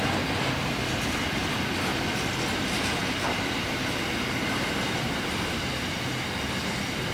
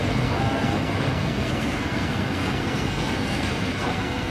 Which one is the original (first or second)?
first